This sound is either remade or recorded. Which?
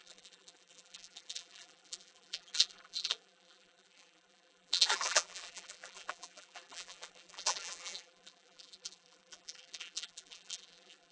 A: remade